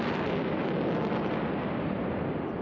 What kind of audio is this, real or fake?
real